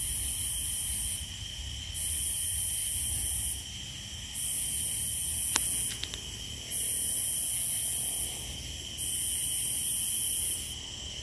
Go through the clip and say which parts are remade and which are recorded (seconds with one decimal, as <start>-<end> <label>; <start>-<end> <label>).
0.0-11.2 recorded